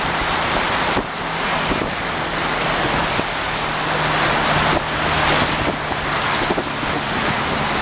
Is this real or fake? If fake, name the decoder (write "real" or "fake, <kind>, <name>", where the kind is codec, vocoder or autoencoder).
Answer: real